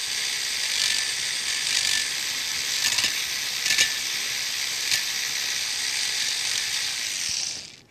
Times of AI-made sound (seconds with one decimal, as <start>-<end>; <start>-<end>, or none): none